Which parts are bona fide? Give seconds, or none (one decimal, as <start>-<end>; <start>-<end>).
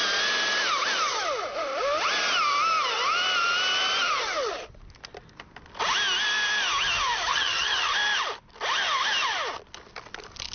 0.0-7.3; 7.9-10.5